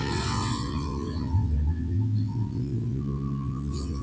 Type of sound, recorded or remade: remade